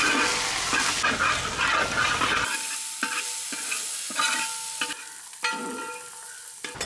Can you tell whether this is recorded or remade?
recorded